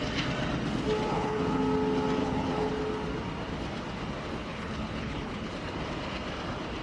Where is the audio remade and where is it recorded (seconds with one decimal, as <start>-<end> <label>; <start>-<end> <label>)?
0.0-1.1 recorded; 1.1-1.6 remade; 1.6-2.2 recorded; 2.2-2.7 remade; 2.7-4.4 recorded; 4.4-5.5 remade; 5.5-6.8 recorded